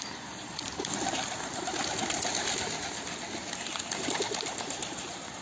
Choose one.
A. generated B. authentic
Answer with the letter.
B